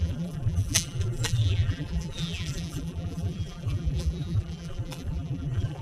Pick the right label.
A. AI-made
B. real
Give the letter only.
A